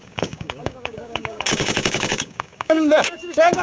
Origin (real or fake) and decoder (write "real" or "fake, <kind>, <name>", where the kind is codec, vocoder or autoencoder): fake, codec, DAC